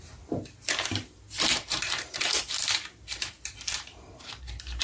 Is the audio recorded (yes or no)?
no